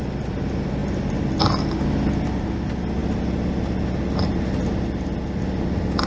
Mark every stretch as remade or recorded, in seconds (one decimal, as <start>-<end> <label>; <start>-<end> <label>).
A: 0.0-6.1 recorded